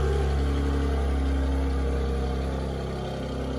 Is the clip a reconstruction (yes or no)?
no